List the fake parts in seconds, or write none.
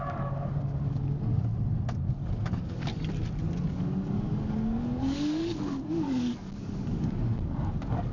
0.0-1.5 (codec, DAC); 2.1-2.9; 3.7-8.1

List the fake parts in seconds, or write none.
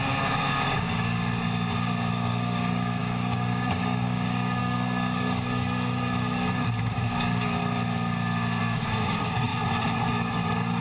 0.0-1.3 (codec, DAC); 2.1-7.6; 8.6-9.5; 10.1-10.8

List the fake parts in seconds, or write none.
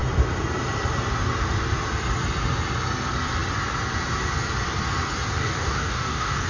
5.4-6.5 (codec, DAC)